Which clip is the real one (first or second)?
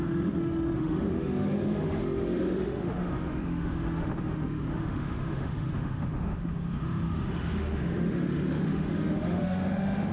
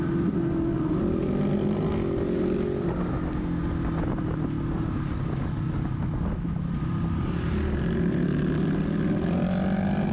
second